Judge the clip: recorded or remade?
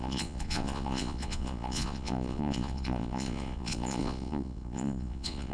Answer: remade